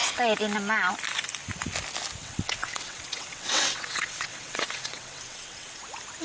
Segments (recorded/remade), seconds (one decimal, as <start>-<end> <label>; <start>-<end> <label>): 0.0-2.2 recorded; 2.2-5.8 remade; 5.8-6.2 recorded